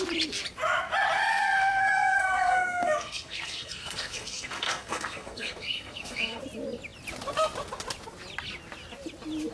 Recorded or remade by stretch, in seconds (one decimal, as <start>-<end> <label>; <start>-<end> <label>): 0.0-1.3 recorded; 1.3-6.4 remade; 6.4-9.5 recorded

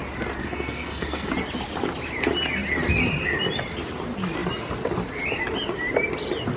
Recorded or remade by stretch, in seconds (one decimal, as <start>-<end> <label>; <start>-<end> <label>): 0.0-0.4 recorded; 0.4-1.3 remade; 1.3-6.6 recorded